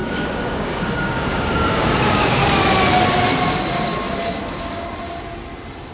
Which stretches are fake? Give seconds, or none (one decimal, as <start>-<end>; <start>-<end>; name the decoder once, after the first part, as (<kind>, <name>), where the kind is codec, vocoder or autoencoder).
0.0-2.4 (codec, DAC)